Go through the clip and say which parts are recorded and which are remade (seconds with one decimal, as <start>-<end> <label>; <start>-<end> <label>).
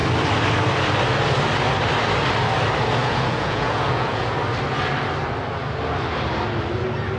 0.0-3.0 recorded; 3.0-4.2 remade; 4.2-7.2 recorded